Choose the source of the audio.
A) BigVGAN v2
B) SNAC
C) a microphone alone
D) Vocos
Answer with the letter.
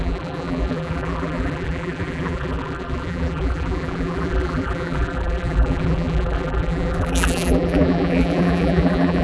A